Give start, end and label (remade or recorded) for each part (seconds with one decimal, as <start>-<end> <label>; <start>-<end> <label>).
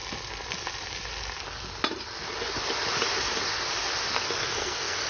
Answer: 0.0-4.1 recorded; 4.1-5.1 remade